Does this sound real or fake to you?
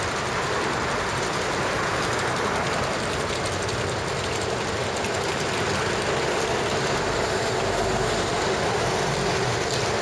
real